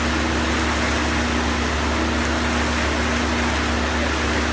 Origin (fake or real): real